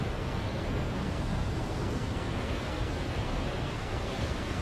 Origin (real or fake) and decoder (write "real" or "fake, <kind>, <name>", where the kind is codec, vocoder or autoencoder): fake, codec, SNAC